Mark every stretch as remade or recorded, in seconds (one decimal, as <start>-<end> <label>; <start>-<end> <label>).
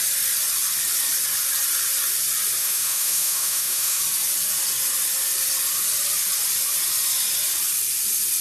0.0-2.6 recorded; 2.6-4.0 remade; 4.0-8.4 recorded